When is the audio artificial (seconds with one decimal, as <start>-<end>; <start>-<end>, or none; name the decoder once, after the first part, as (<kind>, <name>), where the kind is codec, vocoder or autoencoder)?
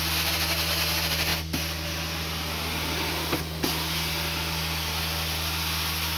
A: none